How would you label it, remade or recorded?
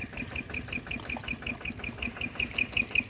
recorded